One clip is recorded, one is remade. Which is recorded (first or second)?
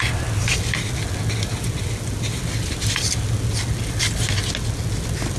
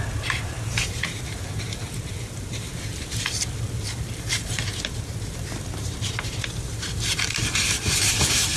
first